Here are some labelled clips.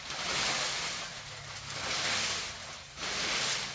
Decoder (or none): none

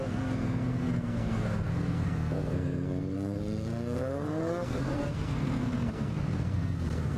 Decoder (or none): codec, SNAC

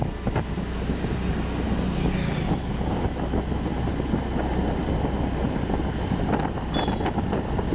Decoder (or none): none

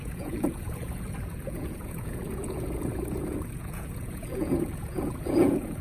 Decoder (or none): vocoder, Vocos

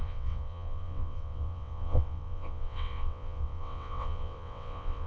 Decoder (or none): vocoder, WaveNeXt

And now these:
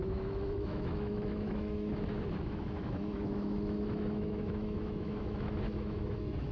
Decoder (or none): autoencoder, DAC-VAE